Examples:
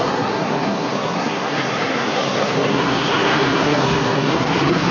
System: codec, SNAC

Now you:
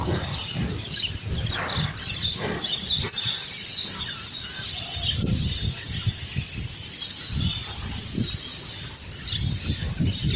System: none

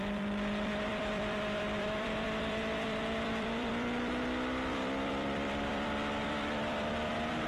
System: vocoder, BigVGAN v2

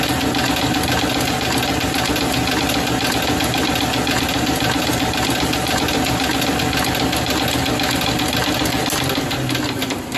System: none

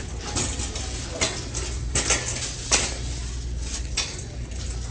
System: none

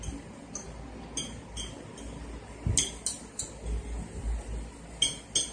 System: none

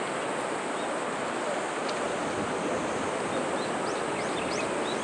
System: none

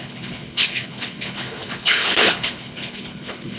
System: codec, HILCodec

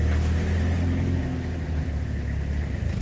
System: none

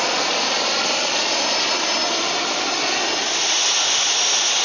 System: none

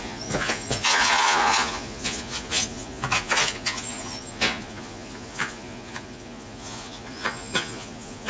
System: vocoder, Vocos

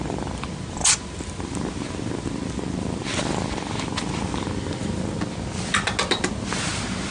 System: none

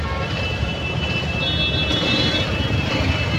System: none